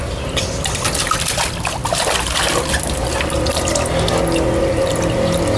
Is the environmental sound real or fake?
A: real